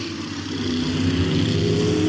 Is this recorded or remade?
recorded